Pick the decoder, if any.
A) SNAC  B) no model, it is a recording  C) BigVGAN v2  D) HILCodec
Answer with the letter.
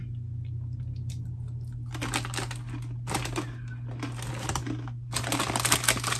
B